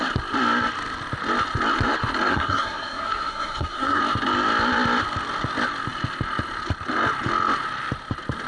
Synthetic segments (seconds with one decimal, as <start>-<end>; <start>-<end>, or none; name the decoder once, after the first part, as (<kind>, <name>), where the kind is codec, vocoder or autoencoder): 2.3-4.0 (codec, SNAC)